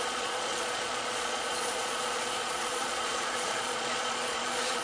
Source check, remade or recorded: remade